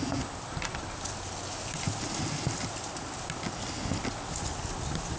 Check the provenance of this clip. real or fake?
real